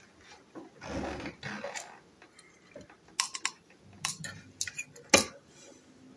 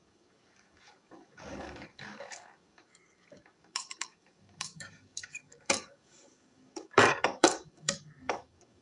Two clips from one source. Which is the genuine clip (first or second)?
first